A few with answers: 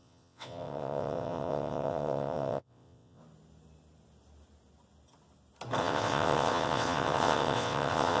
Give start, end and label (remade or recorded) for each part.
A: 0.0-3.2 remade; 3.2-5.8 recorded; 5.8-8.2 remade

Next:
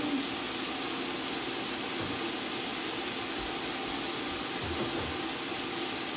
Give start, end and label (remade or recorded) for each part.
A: 0.0-6.2 recorded

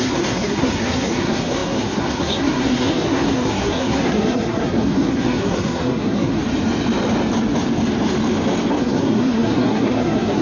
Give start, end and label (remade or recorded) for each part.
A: 0.0-6.4 remade; 6.4-8.8 recorded; 8.8-10.4 remade